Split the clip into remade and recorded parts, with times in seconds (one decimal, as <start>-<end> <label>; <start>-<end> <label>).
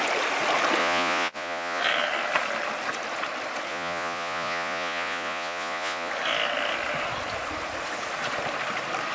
0.0-0.8 recorded; 0.8-1.8 remade; 1.8-3.7 recorded; 3.7-6.1 remade; 6.1-9.1 recorded